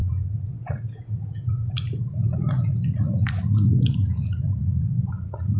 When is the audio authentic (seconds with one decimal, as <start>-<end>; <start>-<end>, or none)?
1.7-2.1